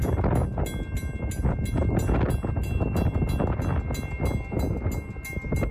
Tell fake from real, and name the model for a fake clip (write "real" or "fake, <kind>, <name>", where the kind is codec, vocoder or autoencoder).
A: real